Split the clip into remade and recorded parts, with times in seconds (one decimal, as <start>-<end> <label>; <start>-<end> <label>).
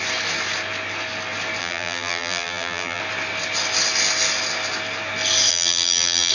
0.0-1.6 recorded; 1.6-3.0 remade; 3.0-5.5 recorded; 5.5-6.3 remade